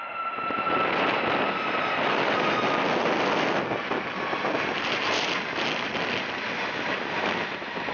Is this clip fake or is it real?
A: real